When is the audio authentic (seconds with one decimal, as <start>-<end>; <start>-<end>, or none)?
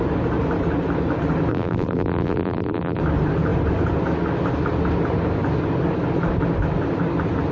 0.0-1.5; 3.0-7.5